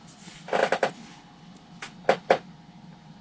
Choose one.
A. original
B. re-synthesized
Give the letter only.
A